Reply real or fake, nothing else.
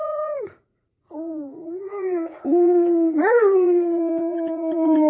fake